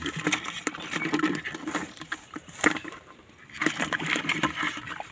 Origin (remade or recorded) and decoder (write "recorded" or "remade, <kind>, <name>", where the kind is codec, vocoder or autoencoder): recorded